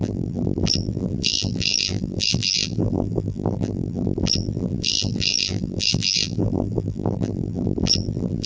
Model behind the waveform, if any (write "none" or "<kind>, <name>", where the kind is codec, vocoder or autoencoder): vocoder, BigVGAN v2